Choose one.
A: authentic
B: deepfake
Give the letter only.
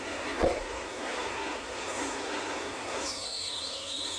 B